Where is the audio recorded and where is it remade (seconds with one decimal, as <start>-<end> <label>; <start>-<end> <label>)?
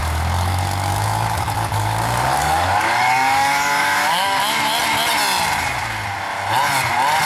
0.0-4.4 remade; 4.4-7.3 recorded